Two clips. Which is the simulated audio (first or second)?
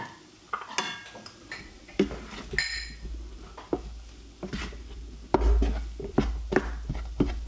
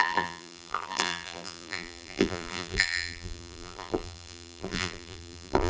second